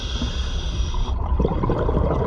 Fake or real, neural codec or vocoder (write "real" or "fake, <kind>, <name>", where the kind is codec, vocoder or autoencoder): real